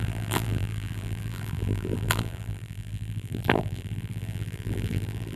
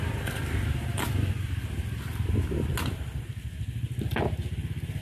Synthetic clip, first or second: first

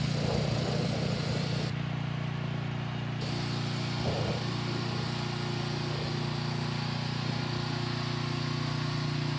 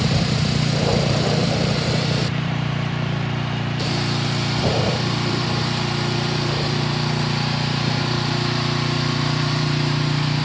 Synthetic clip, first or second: second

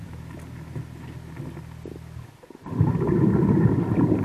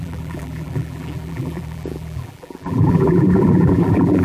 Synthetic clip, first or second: second